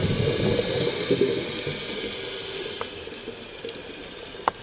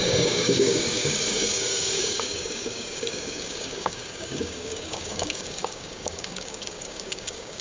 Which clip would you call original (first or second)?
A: first